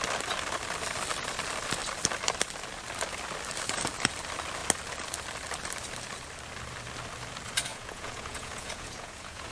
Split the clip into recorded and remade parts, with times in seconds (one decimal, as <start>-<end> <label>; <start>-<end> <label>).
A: 0.0-7.7 recorded; 7.7-9.5 remade